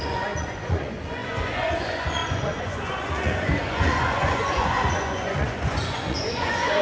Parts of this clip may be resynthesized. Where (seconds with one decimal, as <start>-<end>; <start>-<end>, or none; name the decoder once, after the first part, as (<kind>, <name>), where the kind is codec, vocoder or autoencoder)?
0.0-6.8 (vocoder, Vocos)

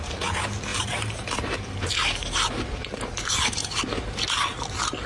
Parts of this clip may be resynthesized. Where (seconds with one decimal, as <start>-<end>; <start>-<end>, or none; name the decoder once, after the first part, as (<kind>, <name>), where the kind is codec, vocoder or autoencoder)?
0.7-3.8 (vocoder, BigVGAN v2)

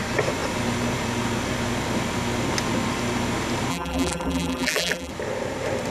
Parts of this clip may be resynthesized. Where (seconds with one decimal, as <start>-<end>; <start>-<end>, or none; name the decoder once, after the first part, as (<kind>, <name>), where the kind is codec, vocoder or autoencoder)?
3.7-5.1 (vocoder, BigVGAN v2)

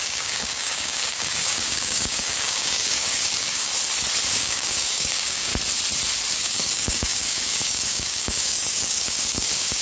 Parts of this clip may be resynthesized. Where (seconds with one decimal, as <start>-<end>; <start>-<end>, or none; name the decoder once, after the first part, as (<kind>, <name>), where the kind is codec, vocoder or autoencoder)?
0.0-3.7 (codec, DAC); 4.3-5.5; 6.3-9.8